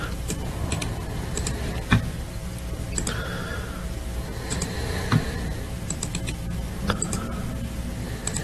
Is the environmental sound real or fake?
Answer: real